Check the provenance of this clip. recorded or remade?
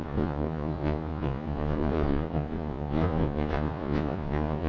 remade